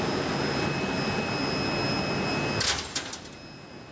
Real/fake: real